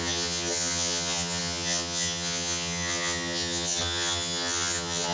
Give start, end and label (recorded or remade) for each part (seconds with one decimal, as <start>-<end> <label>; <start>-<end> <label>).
0.0-5.1 remade